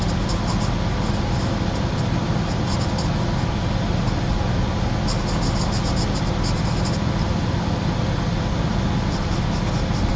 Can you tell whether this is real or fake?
real